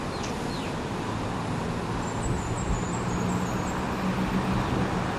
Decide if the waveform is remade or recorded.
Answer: recorded